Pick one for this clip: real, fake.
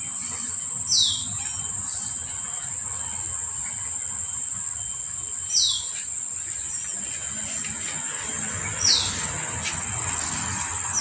real